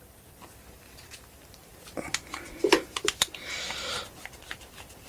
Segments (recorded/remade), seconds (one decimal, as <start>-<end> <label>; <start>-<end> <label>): 0.0-5.1 remade

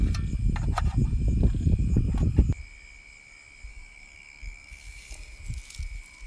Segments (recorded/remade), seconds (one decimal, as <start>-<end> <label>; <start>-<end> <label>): 0.0-3.7 recorded; 3.7-5.3 remade; 5.3-6.3 recorded